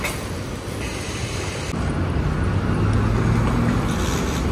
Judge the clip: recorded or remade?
recorded